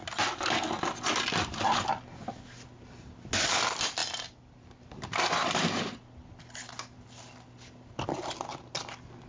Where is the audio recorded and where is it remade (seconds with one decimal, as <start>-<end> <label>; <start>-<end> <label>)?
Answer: 0.0-9.3 recorded

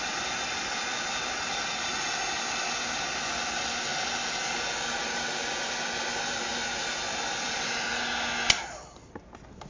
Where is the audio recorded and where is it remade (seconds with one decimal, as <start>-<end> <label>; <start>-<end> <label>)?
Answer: 0.0-9.7 recorded

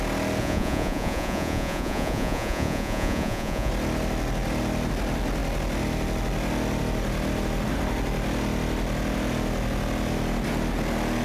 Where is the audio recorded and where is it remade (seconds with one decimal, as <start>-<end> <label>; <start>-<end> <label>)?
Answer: 0.0-0.4 recorded; 0.4-3.7 remade; 3.7-11.2 recorded

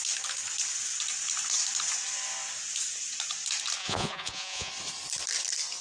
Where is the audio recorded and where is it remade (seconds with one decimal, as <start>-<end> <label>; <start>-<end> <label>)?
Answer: 0.0-3.8 recorded; 3.8-4.7 remade; 4.7-5.8 recorded

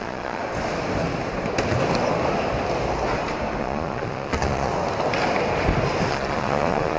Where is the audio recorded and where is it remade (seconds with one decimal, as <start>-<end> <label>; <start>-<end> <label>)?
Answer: 0.0-0.4 remade; 0.4-3.6 recorded; 3.6-4.7 remade; 4.7-6.1 recorded; 6.1-7.0 remade

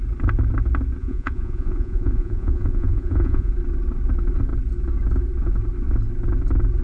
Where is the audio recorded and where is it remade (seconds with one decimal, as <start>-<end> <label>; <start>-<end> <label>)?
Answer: 0.0-1.0 recorded; 1.0-3.5 remade; 3.5-6.8 recorded

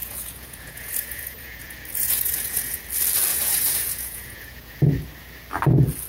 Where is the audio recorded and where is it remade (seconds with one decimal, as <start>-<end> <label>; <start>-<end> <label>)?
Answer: 0.0-2.8 remade; 2.8-3.3 recorded; 3.3-4.8 remade; 4.8-6.1 recorded